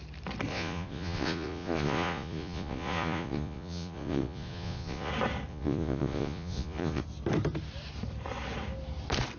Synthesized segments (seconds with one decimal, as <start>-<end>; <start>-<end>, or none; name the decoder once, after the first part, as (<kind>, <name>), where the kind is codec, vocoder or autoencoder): 0.5-5.1 (vocoder, Vocos); 5.5-7.0